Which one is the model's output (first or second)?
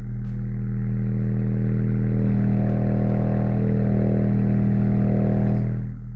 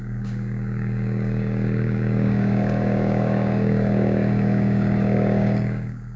second